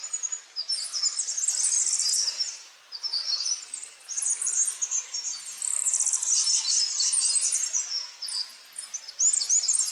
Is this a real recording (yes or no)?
yes